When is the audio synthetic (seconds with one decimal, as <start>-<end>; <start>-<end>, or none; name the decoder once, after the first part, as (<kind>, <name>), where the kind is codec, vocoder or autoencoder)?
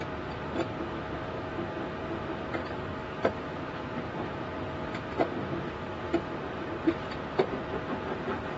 2.6-3.3 (codec, DAC)